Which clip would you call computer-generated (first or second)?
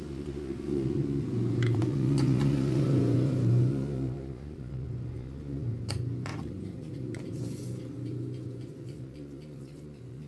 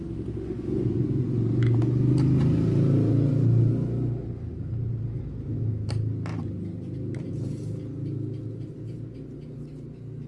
first